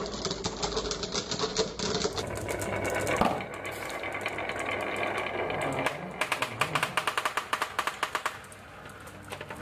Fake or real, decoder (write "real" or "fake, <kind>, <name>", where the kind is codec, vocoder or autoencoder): real